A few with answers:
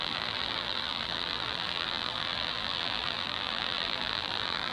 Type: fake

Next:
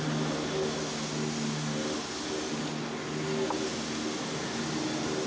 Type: real